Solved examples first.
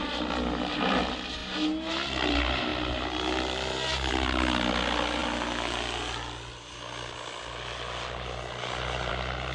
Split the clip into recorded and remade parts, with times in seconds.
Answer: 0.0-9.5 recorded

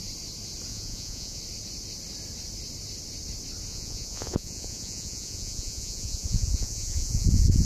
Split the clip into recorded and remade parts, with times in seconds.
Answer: 0.0-0.7 recorded; 0.7-1.4 remade; 1.4-3.7 recorded; 3.7-7.7 remade

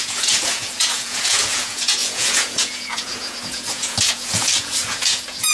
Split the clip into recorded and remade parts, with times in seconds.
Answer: 0.0-5.5 remade